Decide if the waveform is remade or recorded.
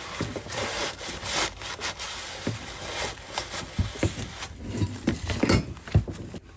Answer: recorded